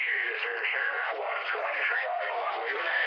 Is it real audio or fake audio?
fake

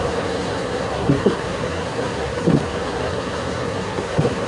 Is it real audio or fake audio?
fake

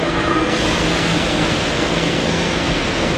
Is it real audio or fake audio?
fake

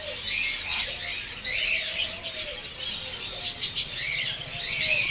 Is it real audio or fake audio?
real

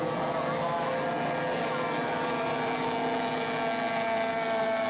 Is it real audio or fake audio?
real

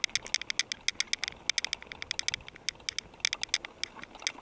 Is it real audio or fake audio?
real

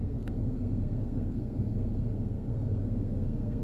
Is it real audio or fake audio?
fake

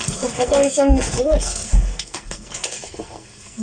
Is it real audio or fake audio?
fake